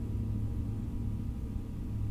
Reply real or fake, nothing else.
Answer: real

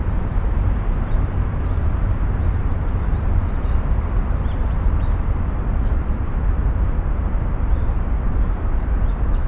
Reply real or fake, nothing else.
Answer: fake